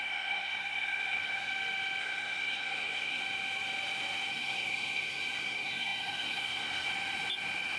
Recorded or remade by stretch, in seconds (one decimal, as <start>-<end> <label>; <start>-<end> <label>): 0.0-1.5 remade; 1.5-2.0 recorded; 2.0-3.2 remade; 3.2-4.3 recorded; 4.3-6.9 remade; 6.9-7.8 recorded